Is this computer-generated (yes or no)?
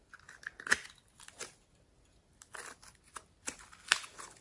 no